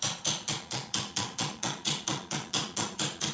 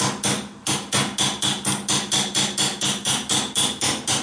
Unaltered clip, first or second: second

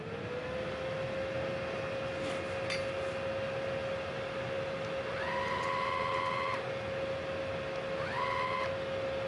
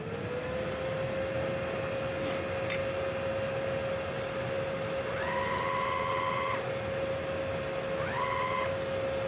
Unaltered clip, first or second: first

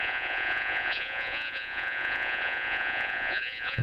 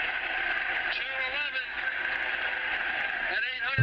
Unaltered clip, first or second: second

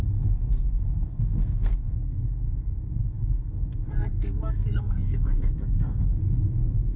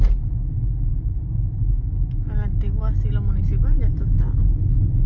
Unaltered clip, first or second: second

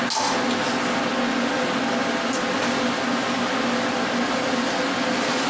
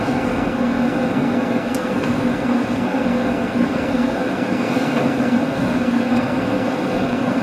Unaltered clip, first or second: first